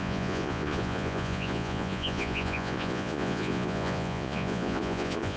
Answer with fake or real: fake